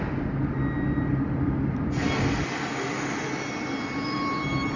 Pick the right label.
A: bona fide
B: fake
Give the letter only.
A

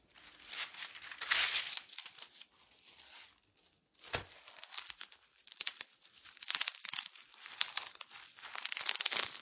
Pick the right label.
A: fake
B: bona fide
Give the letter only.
A